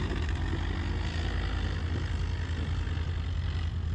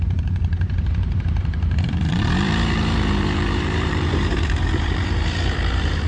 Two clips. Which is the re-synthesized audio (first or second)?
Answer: second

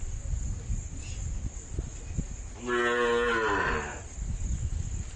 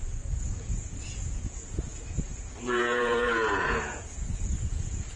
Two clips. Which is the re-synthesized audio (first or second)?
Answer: second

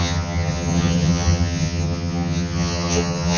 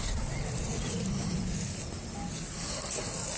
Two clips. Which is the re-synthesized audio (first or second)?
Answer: first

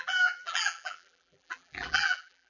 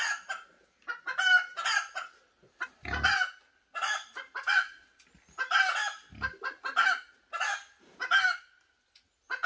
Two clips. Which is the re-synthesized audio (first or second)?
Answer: first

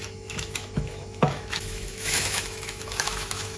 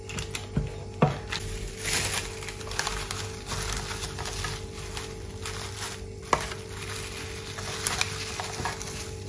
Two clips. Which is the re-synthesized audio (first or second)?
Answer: first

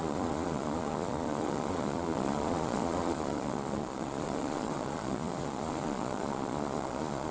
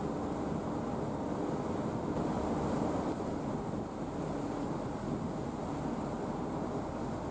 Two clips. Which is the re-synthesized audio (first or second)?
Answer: first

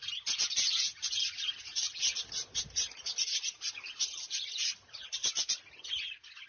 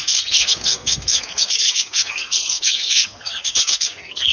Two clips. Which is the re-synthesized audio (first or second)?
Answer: second